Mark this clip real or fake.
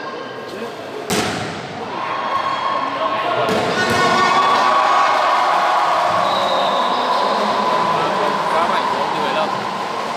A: real